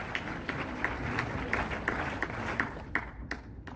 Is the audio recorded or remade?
recorded